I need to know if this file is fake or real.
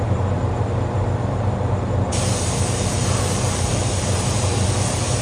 fake